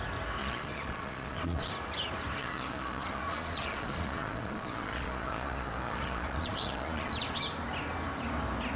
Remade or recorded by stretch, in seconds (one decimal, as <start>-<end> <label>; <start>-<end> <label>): 0.0-0.4 recorded; 0.4-1.7 remade; 1.7-2.4 recorded; 2.4-7.1 remade; 7.1-8.8 recorded